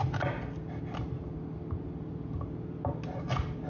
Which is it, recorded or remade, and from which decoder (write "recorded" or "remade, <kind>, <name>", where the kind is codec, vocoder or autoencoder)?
recorded